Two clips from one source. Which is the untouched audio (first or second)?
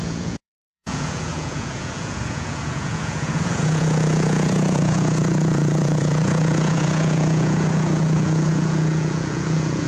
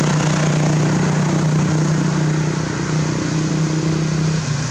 second